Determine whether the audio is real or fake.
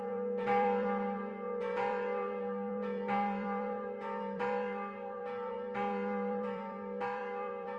fake